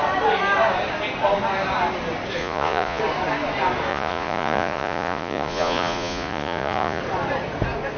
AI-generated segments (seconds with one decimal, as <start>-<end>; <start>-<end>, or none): 2.4-3.0; 3.9-7.0